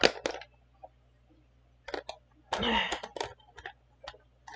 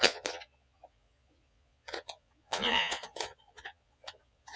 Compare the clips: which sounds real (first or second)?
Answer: first